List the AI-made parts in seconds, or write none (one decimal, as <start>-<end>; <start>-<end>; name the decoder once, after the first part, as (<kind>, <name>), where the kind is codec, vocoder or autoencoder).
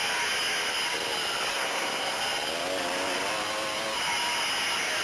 1.5-2.2 (codec, SNAC)